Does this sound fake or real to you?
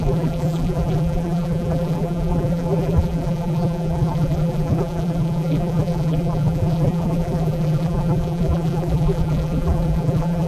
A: fake